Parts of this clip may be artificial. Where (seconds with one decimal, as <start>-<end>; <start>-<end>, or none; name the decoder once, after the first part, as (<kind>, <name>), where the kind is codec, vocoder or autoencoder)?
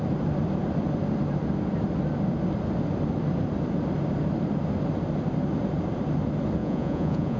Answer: 6.6-7.4 (vocoder, Vocos)